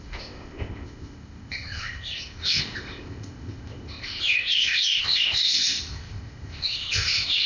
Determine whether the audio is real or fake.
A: fake